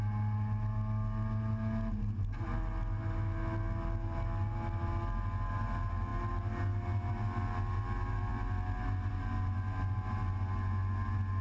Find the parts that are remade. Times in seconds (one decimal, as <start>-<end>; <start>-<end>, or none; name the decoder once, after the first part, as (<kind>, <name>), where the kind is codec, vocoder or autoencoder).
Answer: none